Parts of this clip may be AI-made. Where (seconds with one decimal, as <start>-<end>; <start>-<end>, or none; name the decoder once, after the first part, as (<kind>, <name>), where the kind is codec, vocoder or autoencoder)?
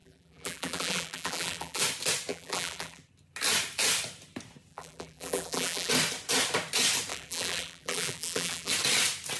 0.0-1.8 (vocoder, BigVGAN v2); 2.3-3.0; 4.7-5.9; 7.1-8.7